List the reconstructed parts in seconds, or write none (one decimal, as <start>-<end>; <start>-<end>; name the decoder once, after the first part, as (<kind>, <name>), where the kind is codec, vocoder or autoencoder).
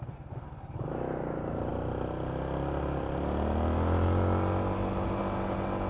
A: none